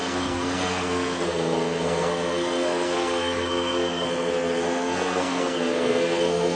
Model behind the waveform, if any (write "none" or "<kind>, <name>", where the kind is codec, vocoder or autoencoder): codec, SNAC